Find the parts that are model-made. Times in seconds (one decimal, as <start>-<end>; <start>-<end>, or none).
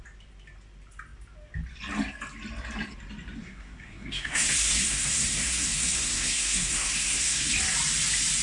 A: 3.4-7.5